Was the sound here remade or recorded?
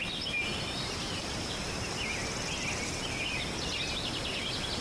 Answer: recorded